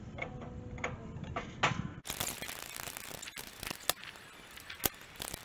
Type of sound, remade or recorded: recorded